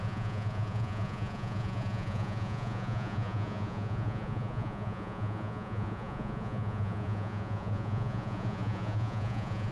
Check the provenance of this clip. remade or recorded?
remade